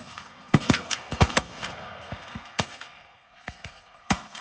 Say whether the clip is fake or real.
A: fake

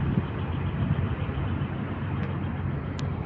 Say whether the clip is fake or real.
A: real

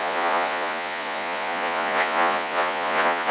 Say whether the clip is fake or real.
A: fake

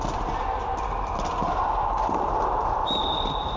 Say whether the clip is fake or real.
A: real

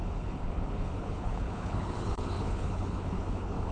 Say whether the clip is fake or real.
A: fake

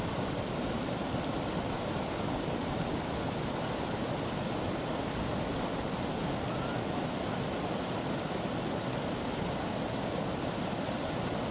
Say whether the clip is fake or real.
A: real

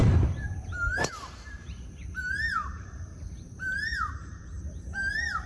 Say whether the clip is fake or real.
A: fake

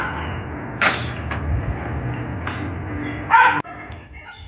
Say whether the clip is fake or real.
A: real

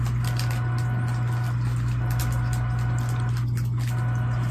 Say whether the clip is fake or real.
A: real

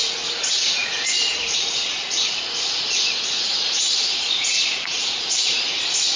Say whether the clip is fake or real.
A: fake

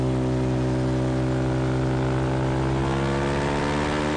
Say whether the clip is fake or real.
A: real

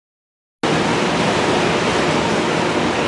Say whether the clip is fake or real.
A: real